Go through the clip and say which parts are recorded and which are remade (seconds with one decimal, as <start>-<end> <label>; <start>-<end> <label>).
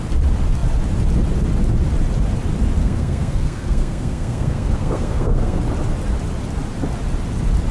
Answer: 0.0-2.8 recorded; 2.8-5.6 remade; 5.6-7.7 recorded